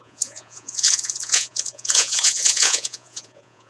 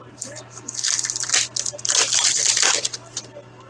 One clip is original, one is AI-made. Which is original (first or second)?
second